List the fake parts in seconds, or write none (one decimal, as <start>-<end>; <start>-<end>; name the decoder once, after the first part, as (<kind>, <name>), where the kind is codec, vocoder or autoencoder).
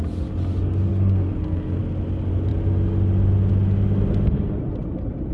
0.9-1.8 (codec, SNAC)